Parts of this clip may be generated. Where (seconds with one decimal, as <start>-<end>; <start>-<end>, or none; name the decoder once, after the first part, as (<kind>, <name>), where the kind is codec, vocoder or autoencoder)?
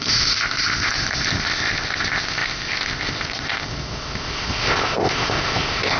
0.0-6.0 (codec, ZipCodec)